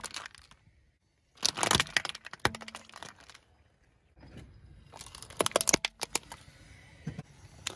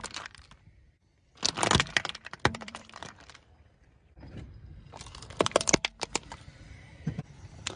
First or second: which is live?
first